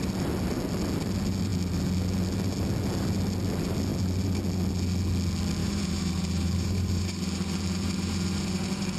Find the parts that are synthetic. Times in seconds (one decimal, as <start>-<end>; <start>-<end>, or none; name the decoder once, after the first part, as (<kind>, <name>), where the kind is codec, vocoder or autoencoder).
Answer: 5.6-9.0 (vocoder, BigVGAN v2)